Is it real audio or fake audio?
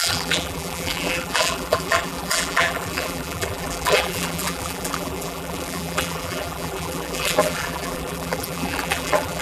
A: fake